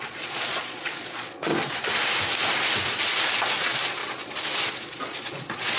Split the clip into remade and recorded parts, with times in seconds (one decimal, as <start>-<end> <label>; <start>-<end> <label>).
0.0-1.5 remade; 1.5-3.3 recorded; 3.3-4.0 remade; 4.0-4.7 recorded; 4.7-5.8 remade